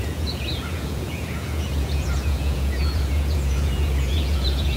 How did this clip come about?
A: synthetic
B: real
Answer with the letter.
A